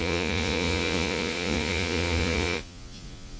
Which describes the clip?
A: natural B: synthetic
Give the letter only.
B